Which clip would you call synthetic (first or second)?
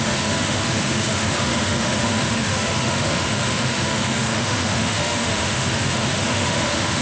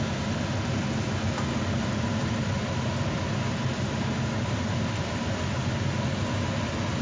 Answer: first